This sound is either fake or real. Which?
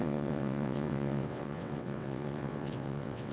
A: fake